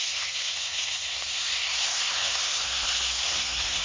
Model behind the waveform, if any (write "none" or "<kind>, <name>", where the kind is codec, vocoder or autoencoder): codec, SNAC